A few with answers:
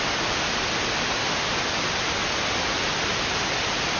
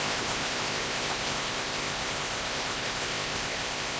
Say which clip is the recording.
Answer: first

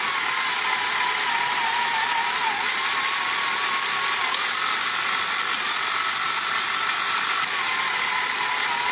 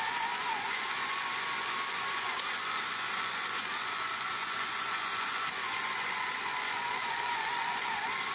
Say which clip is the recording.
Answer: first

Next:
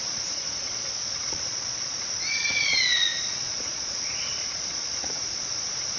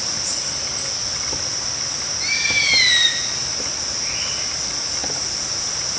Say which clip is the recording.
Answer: second